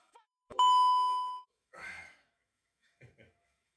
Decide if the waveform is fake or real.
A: fake